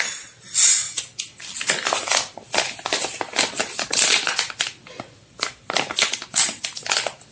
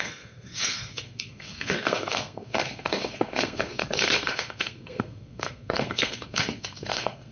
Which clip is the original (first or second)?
first